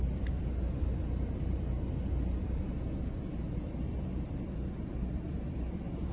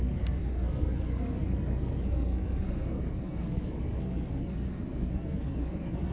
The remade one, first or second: second